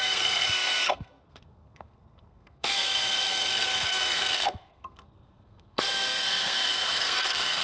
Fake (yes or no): yes